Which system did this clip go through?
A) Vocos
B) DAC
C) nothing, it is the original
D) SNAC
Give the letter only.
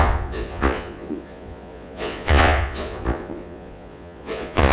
A